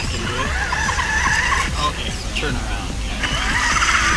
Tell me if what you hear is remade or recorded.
remade